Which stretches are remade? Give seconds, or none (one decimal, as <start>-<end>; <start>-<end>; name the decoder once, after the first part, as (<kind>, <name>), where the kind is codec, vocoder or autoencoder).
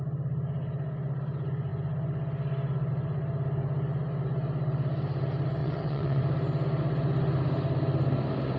5.6-6.2 (vocoder, WaveNeXt)